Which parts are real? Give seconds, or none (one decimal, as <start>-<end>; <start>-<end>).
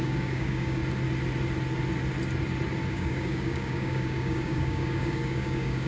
0.8-2.9